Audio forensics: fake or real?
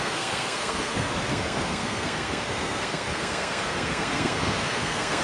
fake